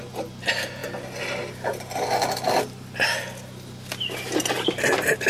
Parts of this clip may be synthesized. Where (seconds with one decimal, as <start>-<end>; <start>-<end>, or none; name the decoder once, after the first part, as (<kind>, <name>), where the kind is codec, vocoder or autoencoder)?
none